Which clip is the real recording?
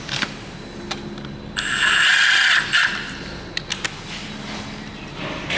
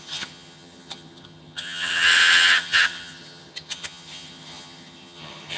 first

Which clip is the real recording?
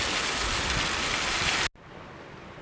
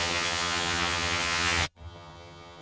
first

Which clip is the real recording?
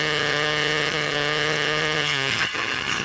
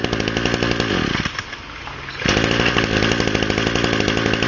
second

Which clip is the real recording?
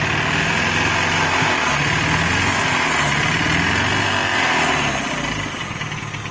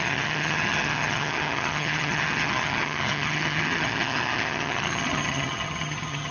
first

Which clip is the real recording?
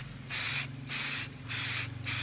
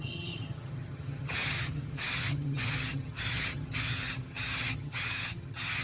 first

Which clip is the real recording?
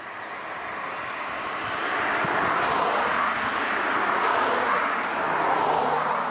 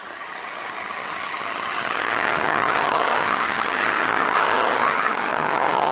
first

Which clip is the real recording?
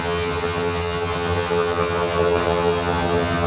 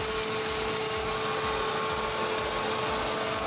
second